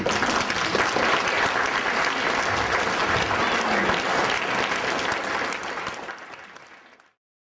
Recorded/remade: recorded